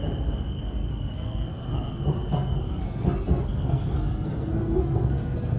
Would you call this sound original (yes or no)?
no